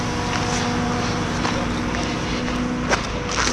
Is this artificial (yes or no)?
no